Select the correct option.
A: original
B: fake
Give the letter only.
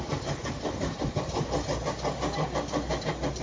A